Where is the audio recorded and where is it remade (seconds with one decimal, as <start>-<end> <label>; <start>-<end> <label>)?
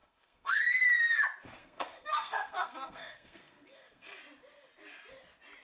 0.0-0.6 remade; 0.6-1.6 recorded; 1.6-4.2 remade; 4.2-5.6 recorded